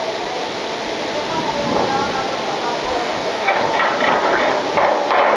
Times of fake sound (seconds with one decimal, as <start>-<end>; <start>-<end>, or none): 2.9-3.7